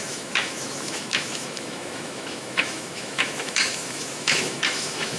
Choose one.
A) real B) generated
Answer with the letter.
B